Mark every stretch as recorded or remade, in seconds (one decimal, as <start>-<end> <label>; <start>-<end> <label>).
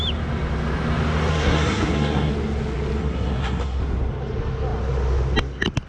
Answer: 0.0-1.3 recorded; 1.3-2.3 remade; 2.3-3.0 recorded; 3.0-3.8 remade; 3.8-5.9 recorded